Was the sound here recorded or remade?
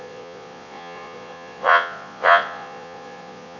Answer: remade